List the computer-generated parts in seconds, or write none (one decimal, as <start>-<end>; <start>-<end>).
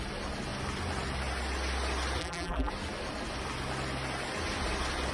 2.2-2.7